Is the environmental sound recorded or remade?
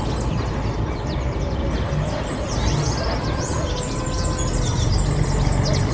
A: recorded